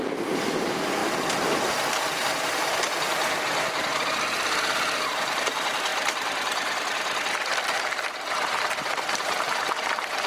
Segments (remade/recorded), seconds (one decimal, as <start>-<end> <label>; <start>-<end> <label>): 0.0-10.3 remade